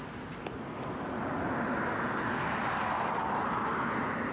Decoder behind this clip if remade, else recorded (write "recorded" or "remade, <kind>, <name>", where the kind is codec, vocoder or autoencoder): recorded